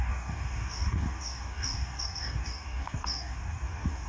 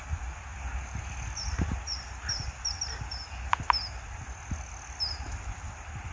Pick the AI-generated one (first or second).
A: first